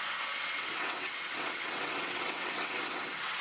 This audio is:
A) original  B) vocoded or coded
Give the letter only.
B